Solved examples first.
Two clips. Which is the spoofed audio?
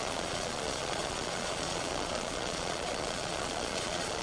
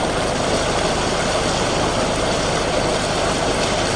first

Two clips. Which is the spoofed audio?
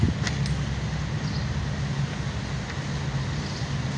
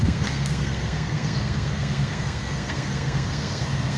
second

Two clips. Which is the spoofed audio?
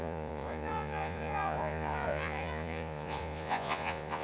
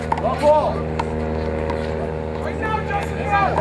first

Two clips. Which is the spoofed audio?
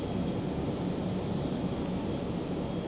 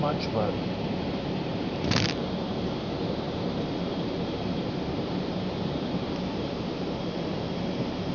second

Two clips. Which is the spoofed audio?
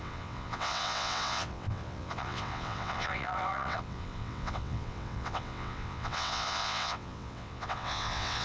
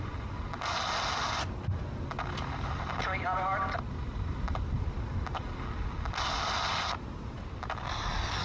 first